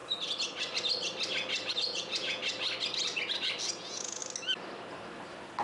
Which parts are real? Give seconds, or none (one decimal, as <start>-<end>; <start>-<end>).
0.0-1.7; 2.4-3.8; 4.2-5.6